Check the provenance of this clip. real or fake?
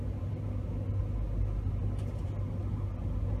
real